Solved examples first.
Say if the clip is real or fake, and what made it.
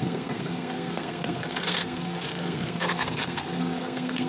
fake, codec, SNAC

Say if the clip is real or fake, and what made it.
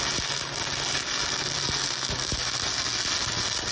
real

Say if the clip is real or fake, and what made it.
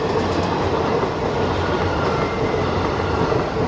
real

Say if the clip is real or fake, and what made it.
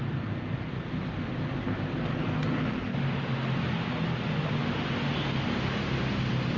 real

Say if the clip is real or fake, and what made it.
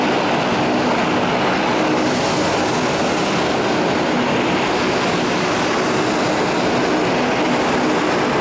real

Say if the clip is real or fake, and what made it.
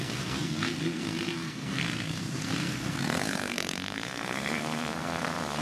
fake, codec, SNAC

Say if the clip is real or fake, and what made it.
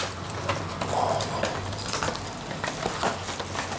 real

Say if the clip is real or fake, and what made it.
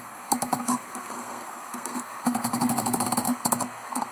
fake, codec, SNAC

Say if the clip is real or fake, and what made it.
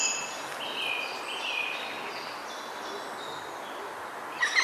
real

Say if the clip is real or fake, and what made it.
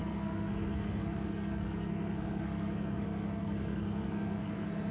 fake, codec, SNAC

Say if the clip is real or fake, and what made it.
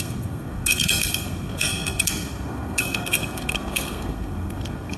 fake, codec, SNAC